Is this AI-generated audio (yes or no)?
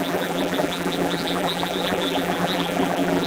yes